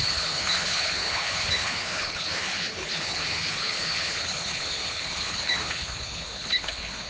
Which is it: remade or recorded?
remade